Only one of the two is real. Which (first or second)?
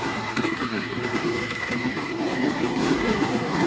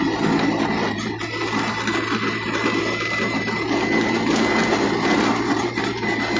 second